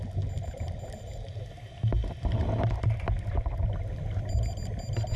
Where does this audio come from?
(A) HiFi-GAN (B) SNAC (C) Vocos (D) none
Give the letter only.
D